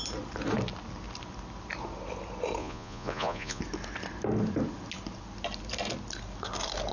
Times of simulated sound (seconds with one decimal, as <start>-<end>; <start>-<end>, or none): 2.6-3.6